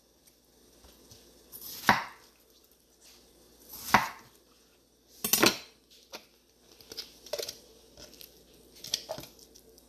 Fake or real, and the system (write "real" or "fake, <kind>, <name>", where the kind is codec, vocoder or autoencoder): real